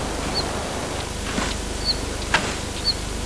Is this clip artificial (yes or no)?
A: no